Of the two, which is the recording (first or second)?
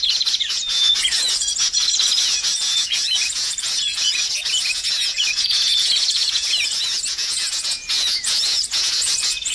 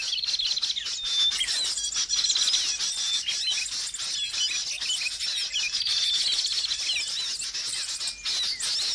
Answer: second